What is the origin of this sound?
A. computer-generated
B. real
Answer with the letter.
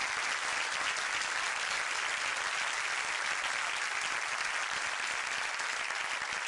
B